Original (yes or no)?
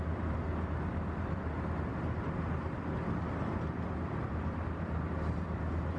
no